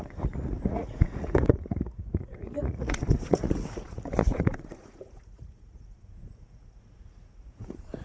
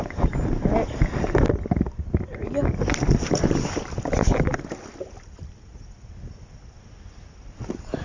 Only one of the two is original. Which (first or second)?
second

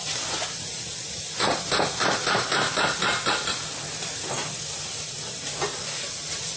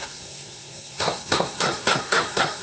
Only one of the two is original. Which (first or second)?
first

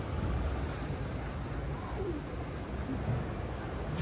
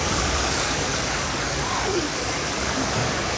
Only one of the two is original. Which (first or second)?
first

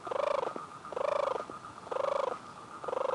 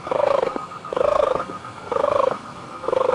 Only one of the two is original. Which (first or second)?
first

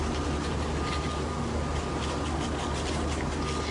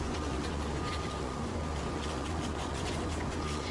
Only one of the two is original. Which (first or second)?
first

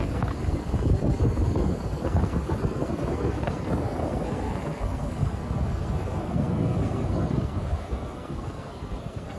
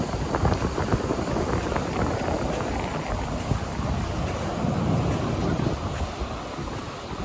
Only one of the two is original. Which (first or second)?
second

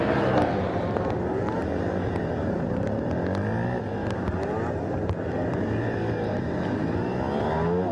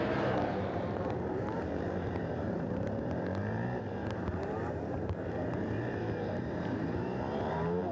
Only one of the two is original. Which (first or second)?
first